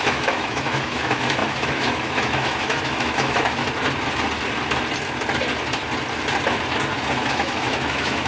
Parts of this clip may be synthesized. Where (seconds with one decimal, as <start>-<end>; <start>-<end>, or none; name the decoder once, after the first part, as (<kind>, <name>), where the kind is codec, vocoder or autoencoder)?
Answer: 0.0-3.6 (autoencoder, DAC-VAE); 7.3-8.3